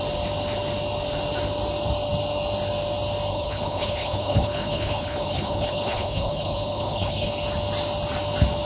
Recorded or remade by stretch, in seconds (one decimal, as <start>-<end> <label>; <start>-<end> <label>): 0.0-3.3 recorded; 3.3-7.3 remade; 7.3-8.7 recorded